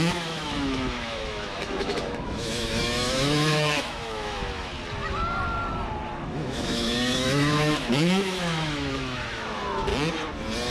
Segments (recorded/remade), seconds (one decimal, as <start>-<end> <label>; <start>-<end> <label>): 0.0-4.7 remade; 4.7-6.2 recorded; 6.2-9.9 remade; 9.9-10.7 recorded